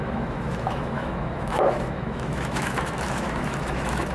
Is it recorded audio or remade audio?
remade